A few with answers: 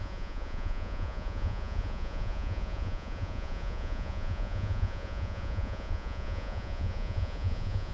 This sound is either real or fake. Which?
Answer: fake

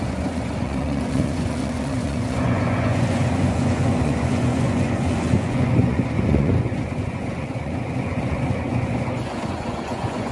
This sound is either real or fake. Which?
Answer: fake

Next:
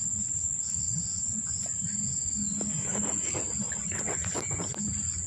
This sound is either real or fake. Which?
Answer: real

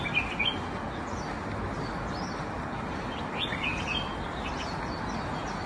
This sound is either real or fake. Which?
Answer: real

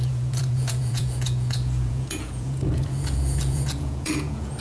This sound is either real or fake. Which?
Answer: fake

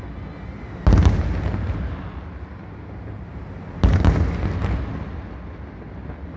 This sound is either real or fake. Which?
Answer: real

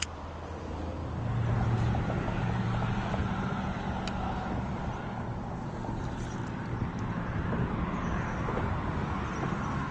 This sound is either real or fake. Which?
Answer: real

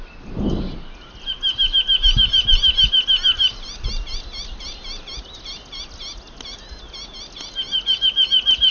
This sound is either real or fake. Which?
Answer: real